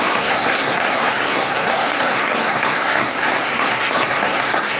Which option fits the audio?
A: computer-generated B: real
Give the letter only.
A